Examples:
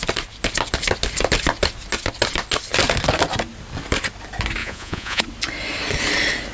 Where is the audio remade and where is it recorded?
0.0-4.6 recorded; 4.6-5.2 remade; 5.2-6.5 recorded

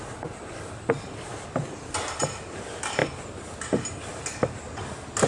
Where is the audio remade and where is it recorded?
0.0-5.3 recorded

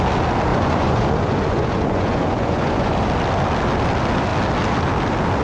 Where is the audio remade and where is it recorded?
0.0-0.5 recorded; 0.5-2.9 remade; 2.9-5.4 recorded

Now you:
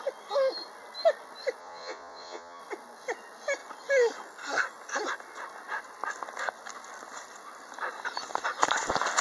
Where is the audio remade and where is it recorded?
0.0-1.6 recorded; 1.6-2.6 remade; 2.6-9.2 recorded

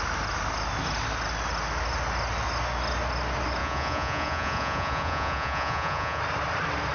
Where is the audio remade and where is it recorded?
0.0-3.6 recorded; 3.6-6.2 remade; 6.2-6.9 recorded

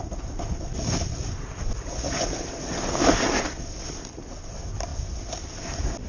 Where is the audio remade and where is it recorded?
0.0-6.1 recorded

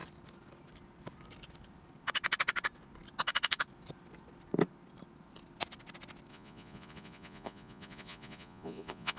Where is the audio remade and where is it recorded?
0.0-6.3 recorded; 6.3-9.2 remade